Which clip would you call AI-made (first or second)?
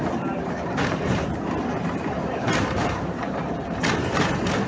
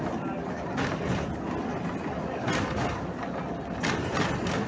first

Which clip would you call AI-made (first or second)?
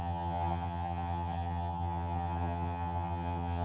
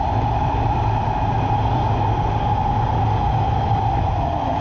first